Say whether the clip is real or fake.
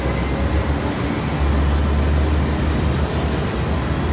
real